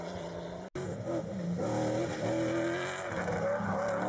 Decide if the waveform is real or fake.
real